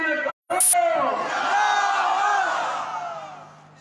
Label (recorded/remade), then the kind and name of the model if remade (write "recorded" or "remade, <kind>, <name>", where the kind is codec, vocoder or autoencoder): recorded